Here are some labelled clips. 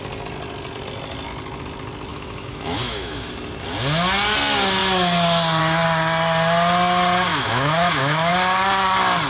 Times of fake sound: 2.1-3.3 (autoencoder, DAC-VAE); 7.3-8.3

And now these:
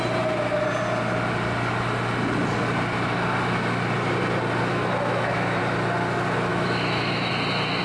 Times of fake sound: 4.7-5.6 (autoencoder, DAC-VAE); 6.5-7.3

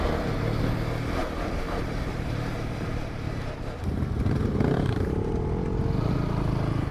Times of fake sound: 1.2-5.3 (vocoder, BigVGAN v2)

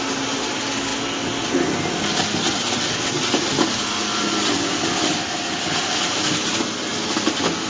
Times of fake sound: none

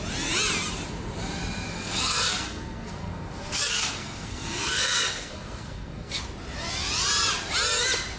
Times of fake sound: 1.7-6.2 (codec, SNAC)

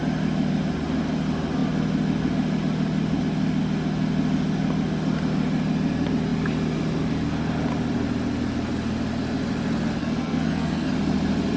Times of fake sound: 10.0-10.9 (codec, SNAC)

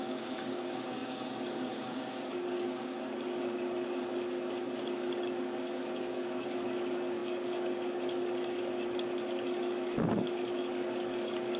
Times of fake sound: 0.0-11.6 (codec, DAC)